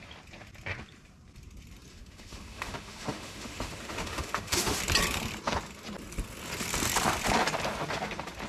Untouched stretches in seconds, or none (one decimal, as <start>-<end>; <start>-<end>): 0.0-1.9; 4.8-8.5